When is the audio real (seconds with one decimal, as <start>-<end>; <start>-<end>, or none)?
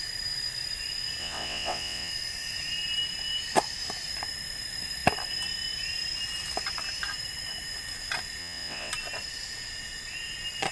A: 0.0-1.2; 2.1-8.4; 8.9-10.7